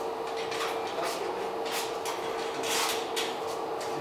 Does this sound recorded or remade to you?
recorded